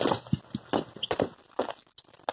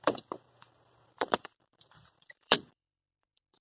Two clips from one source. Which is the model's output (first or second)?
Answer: second